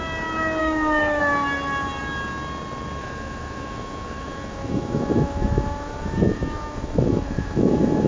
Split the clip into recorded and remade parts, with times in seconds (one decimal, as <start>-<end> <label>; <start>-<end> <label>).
0.0-0.6 recorded; 0.6-1.2 remade; 1.2-3.0 recorded; 3.0-8.1 remade